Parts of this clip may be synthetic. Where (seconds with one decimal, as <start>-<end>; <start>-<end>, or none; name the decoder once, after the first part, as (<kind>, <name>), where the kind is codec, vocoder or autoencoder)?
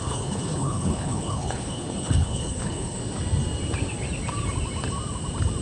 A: 0.0-3.0 (codec, HILCodec)